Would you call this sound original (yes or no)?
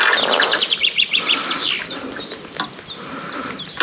yes